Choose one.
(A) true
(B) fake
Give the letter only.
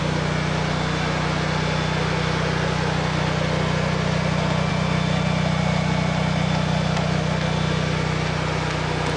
A